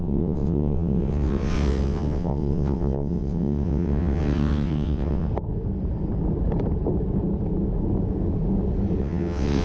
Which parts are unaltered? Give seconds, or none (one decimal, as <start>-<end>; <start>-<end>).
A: 5.3-9.0